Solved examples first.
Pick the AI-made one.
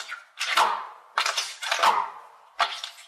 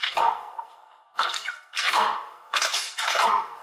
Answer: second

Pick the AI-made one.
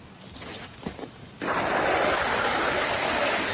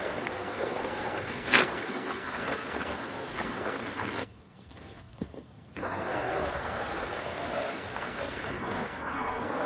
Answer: second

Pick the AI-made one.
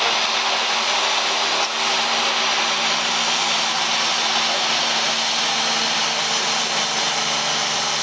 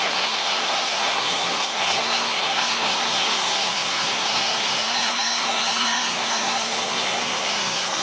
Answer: second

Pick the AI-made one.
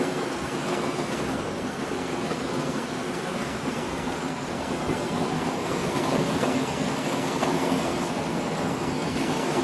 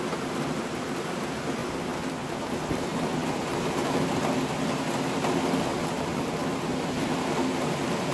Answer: first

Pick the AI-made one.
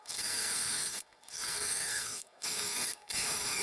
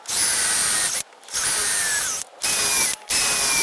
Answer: first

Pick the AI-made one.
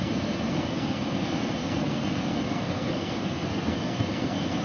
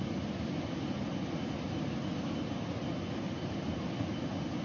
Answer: first